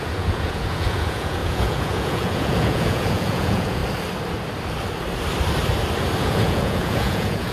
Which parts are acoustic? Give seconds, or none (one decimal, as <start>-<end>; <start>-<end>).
3.8-6.2